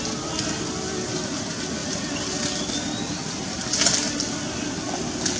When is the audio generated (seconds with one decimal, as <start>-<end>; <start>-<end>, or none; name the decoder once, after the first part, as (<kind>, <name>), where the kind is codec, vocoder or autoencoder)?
none